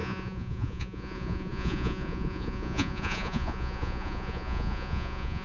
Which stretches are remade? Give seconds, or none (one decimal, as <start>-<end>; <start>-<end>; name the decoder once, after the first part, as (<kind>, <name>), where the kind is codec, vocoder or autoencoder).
0.0-5.4 (vocoder, Vocos)